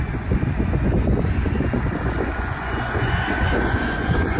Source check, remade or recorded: remade